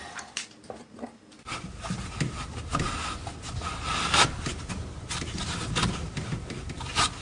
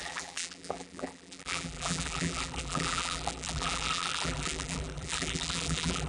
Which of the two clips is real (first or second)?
first